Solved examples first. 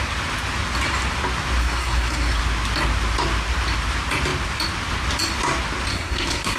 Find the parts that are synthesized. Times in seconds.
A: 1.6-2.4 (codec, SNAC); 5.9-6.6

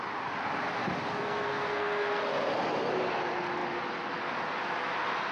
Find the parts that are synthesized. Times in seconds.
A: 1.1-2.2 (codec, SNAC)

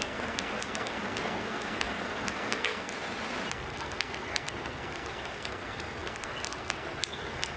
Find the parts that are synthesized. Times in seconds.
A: 0.0-2.9 (codec, SNAC); 3.5-7.6

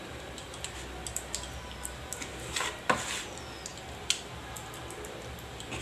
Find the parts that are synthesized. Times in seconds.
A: none

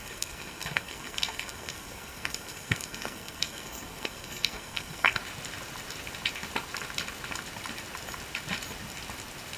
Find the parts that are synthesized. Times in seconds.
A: 0.0-5.2 (codec, SNAC)

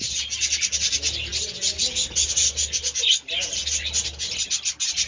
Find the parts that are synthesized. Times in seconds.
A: none

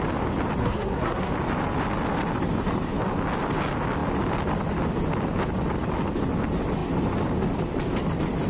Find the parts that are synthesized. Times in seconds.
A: 0.6-1.3 (codec, SNAC)

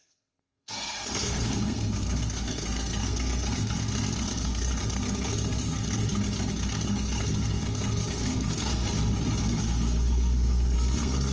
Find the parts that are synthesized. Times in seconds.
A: 0.0-6.0 (codec, SNAC); 6.5-8.8; 9.4-11.3